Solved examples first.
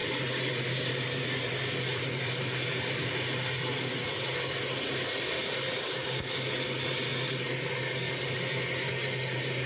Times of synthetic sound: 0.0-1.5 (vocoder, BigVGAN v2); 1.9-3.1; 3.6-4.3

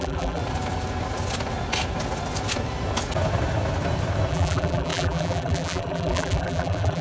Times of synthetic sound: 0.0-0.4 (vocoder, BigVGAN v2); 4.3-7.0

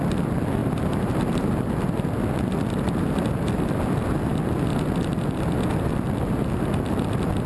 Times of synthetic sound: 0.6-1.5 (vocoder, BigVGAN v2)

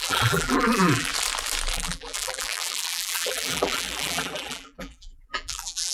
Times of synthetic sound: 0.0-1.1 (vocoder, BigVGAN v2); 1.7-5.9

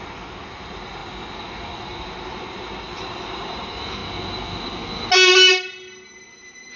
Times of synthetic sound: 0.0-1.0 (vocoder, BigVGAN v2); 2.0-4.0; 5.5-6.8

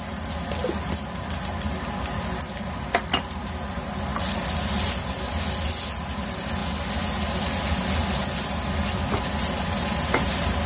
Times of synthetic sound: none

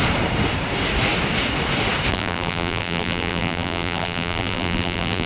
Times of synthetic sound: 2.1-5.3 (vocoder, BigVGAN v2)

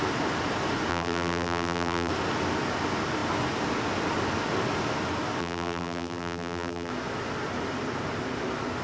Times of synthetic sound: 0.9-2.1 (vocoder, BigVGAN v2); 5.4-6.9